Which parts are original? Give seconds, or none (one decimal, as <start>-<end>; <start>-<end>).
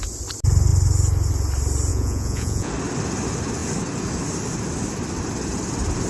0.0-1.9; 2.7-6.1